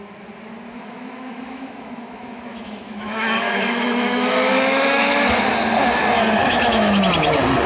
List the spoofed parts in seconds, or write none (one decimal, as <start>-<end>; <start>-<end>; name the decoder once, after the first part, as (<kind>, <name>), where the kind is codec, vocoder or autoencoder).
0.7-5.1 (autoencoder, DAC-VAE); 6.4-7.0